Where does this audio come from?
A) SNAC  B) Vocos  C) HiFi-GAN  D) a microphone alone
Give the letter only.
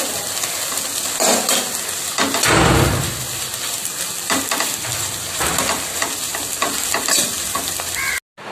D